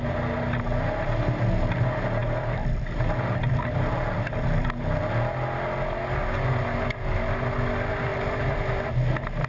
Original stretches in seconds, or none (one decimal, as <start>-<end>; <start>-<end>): 0.0-2.2; 5.0-8.1; 8.9-9.5